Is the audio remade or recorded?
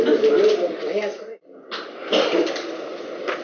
recorded